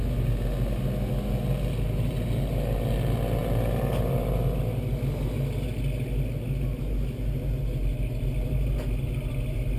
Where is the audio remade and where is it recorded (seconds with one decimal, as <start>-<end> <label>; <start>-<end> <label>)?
0.0-9.8 recorded